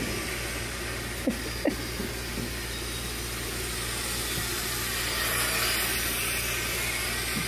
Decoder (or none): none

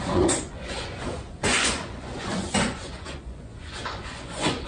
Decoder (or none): vocoder, Vocos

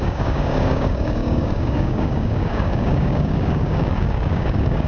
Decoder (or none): codec, DAC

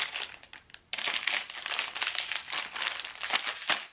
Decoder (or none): none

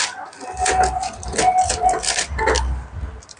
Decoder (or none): none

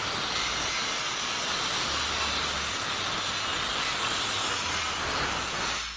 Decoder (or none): none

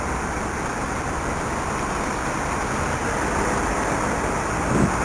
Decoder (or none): none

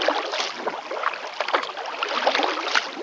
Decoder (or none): none